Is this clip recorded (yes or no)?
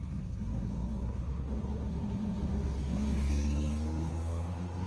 no